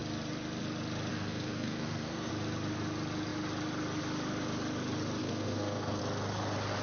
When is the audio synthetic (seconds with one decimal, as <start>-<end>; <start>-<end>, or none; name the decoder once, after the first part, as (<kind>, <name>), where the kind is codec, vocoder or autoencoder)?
1.1-2.3 (codec, SNAC); 5.2-6.0